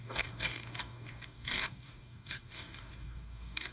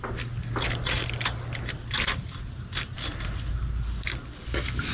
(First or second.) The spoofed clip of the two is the first